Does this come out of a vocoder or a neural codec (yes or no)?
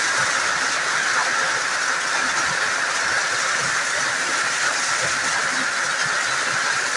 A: no